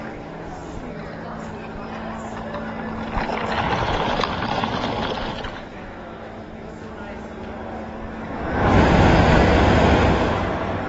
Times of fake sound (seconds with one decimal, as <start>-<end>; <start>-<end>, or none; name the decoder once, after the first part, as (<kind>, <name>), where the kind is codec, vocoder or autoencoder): 5.5-6.9 (autoencoder, DAC-VAE)